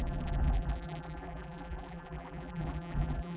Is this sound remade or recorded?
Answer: remade